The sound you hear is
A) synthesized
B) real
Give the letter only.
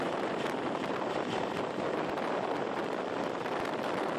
A